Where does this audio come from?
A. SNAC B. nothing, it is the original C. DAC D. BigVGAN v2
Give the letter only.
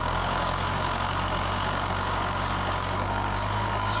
C